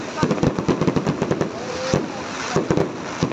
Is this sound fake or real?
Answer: real